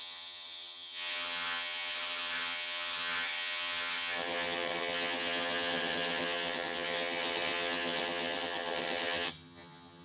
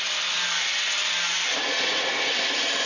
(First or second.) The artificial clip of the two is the first